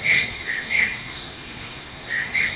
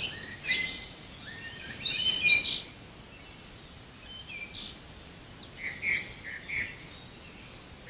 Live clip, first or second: second